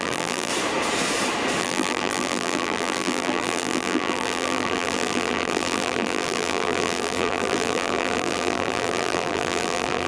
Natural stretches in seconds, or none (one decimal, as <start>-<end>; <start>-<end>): 0.5-1.6